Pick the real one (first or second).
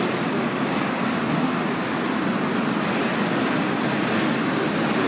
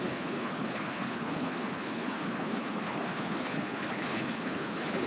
first